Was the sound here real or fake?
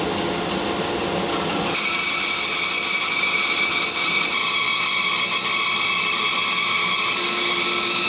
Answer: real